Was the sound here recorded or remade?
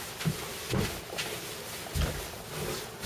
recorded